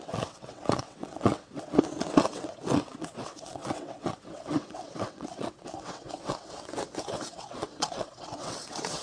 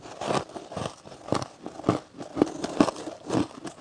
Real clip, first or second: second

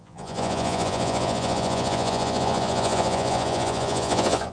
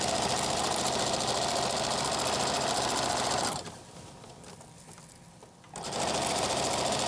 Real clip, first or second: second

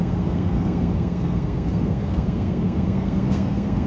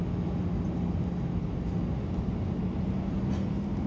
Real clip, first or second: second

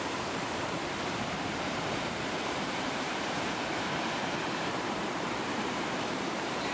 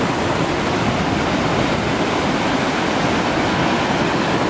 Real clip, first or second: second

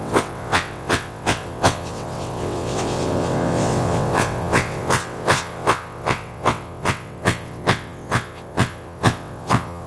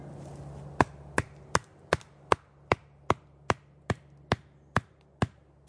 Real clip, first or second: second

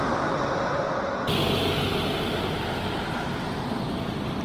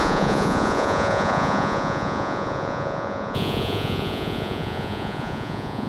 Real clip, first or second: first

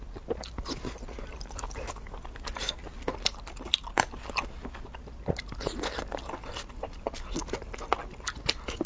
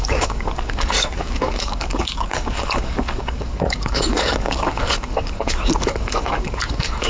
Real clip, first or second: first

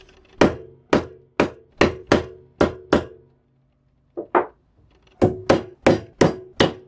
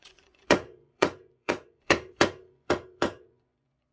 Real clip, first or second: first